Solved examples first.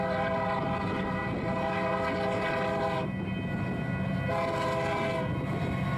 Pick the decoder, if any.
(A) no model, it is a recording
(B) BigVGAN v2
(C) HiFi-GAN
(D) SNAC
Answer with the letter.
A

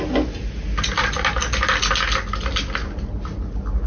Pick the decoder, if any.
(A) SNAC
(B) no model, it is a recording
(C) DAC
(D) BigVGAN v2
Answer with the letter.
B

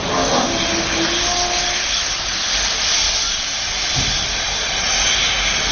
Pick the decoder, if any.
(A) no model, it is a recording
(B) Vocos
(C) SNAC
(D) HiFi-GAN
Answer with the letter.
A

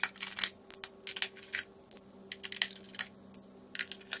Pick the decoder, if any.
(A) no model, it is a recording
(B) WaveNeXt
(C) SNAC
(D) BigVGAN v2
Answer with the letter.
A